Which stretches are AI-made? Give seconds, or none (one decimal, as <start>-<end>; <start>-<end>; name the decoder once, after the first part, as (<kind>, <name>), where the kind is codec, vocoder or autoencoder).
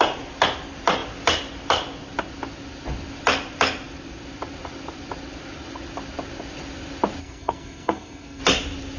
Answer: 7.2-8.4 (codec, SNAC)